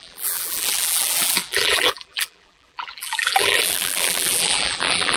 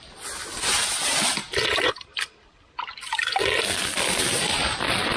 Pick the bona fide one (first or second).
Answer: second